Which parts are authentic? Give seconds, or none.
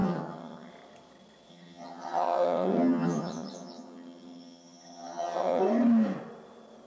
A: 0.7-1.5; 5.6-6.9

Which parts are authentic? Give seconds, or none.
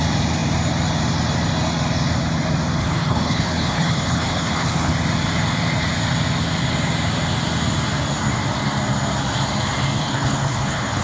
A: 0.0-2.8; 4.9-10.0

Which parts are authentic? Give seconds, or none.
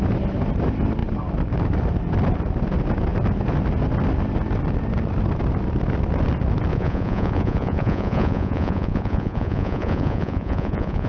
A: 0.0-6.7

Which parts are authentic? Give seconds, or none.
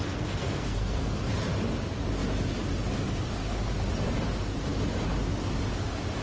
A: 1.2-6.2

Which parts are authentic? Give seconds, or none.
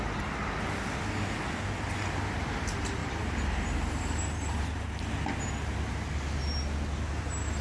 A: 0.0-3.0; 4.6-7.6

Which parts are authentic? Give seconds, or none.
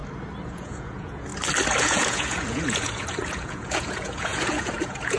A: 0.0-0.5; 1.3-1.8